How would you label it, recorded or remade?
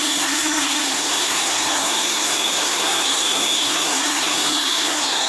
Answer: remade